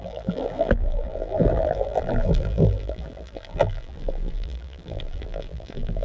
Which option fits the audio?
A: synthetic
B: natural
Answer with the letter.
A